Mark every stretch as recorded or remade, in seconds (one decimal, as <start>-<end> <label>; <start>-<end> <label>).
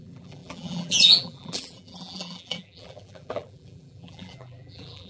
0.0-5.1 remade